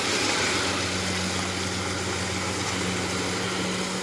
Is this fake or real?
real